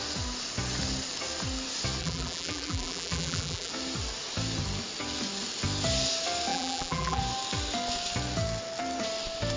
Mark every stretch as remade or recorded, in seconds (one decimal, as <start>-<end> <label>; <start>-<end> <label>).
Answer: 0.0-2.0 recorded; 2.0-3.7 remade; 3.7-6.5 recorded; 6.5-7.2 remade; 7.2-9.6 recorded